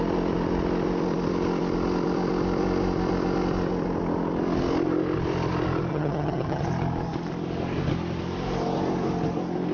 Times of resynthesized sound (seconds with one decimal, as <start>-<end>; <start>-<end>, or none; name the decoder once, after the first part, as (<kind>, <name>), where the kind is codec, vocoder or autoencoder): 5.9-6.6 (vocoder, HiFi-GAN)